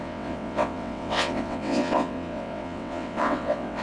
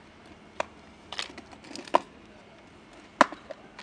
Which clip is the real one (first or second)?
second